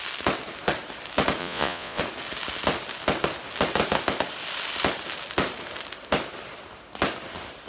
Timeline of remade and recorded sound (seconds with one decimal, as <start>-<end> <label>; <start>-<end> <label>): 0.0-1.4 recorded; 1.4-2.0 remade; 2.0-7.7 recorded